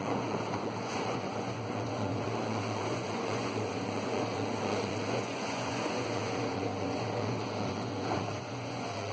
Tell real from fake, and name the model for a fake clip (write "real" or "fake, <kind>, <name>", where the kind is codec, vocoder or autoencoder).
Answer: fake, vocoder, Vocos